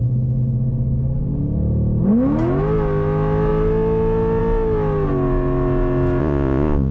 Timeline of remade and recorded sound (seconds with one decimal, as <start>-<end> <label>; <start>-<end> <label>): 0.0-6.2 recorded; 6.2-6.9 remade